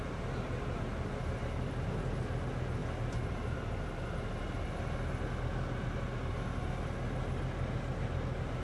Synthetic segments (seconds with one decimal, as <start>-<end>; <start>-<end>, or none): none